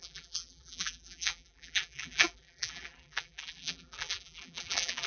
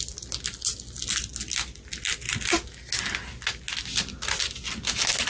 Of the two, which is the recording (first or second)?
second